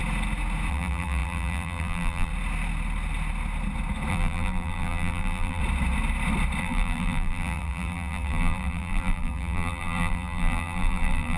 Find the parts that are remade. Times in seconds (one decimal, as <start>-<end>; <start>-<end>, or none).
0.7-2.3; 4.1-5.6; 6.6-11.4